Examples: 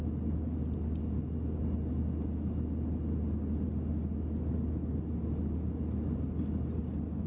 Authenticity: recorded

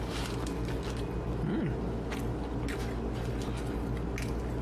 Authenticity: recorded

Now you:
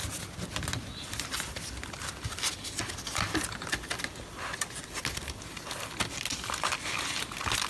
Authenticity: recorded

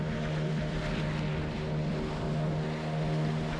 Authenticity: recorded